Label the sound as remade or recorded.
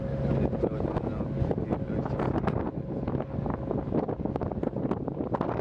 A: recorded